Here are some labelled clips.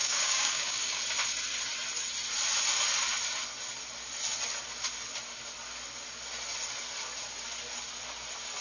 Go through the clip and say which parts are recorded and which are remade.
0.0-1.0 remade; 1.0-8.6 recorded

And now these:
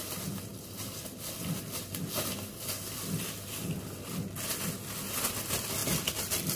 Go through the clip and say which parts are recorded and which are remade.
0.0-6.6 recorded

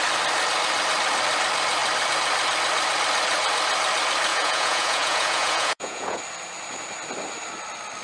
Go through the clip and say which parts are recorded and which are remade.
0.0-4.3 recorded; 4.3-6.2 remade; 6.2-8.0 recorded

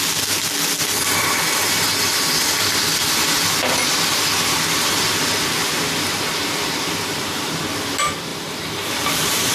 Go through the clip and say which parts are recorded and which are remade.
0.0-5.6 recorded; 5.6-7.6 remade; 7.6-8.3 recorded; 8.3-9.5 remade

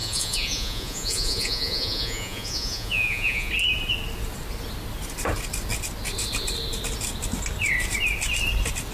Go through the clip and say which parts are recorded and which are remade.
0.0-3.5 remade; 3.5-8.9 recorded

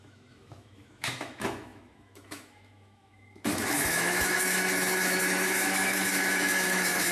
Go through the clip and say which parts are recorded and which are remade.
0.0-7.1 remade

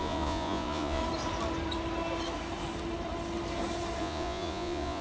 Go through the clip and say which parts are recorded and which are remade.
0.0-1.0 remade; 1.0-4.0 recorded; 4.0-5.0 remade